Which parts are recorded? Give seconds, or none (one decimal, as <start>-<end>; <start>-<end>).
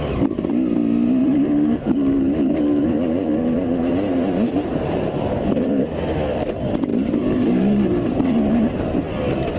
0.0-1.2; 5.8-6.9; 9.0-9.6